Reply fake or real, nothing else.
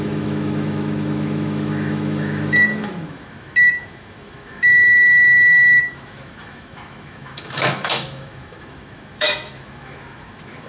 fake